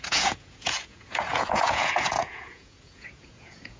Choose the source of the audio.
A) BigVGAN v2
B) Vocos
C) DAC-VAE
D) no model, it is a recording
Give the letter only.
B